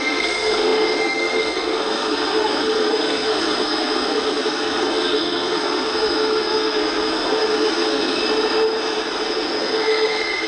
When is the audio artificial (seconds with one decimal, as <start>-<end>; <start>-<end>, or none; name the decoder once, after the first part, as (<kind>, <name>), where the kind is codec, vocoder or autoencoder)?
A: 0.0-8.2 (codec, SNAC); 9.6-10.5